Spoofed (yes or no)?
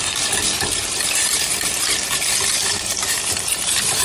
yes